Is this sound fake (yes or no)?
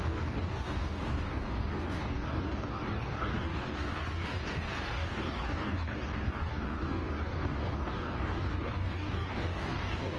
yes